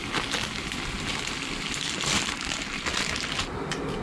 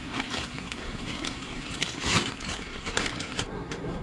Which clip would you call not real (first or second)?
second